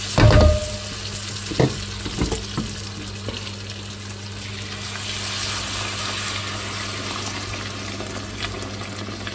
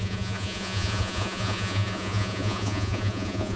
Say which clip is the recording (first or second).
first